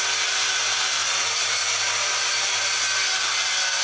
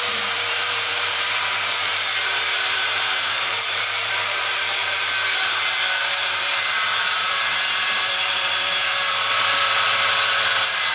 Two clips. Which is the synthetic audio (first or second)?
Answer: second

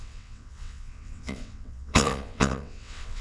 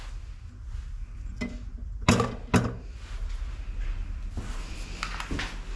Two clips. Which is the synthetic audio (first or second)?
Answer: first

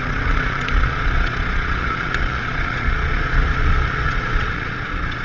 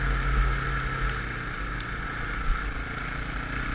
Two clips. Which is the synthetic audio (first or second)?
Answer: first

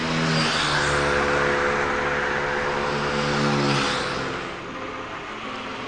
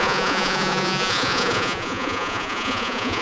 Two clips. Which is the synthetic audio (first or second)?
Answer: second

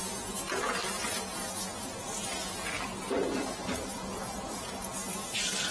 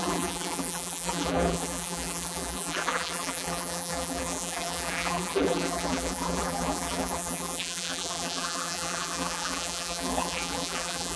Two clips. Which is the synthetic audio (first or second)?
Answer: second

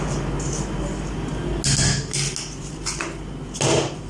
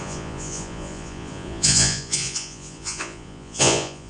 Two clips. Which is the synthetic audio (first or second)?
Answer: second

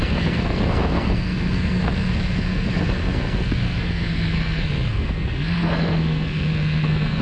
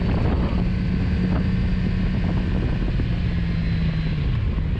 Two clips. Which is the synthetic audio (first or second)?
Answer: first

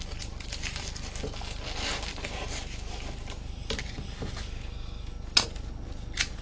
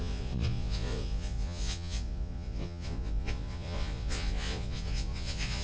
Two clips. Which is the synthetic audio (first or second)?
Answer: second